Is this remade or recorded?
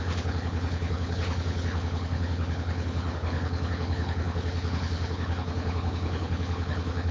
remade